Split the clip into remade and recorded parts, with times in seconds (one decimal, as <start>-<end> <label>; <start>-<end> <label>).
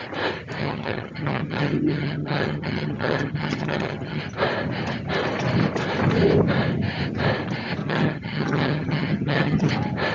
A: 0.0-0.6 recorded; 0.6-4.2 remade; 4.2-7.8 recorded; 7.8-9.7 remade; 9.7-10.1 recorded